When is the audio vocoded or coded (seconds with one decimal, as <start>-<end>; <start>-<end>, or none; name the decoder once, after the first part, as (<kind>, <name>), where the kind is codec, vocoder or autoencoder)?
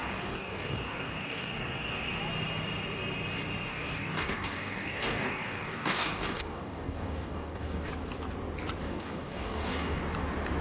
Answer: 0.0-2.2 (codec, DAC); 3.7-7.9; 8.8-10.0